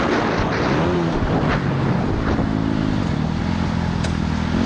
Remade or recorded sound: recorded